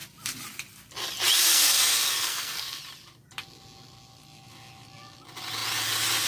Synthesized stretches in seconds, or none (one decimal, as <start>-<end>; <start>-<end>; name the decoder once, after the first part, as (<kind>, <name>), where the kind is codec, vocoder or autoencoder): 1.5-2.8 (codec, SNAC)